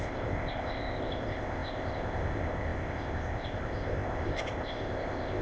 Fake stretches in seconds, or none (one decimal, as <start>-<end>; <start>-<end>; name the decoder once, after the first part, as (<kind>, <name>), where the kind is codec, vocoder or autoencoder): 0.0-5.4 (codec, ZipCodec)